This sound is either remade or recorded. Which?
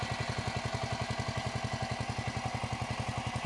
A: recorded